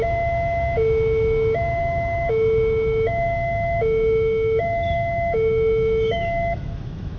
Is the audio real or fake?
fake